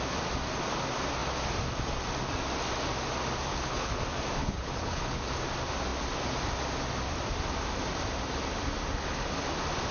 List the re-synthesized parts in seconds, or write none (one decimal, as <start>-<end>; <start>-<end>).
3.5-4.0; 4.4-5.2